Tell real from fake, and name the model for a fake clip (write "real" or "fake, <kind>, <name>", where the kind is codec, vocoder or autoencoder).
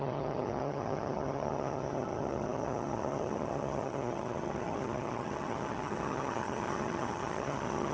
fake, vocoder, HiFi-GAN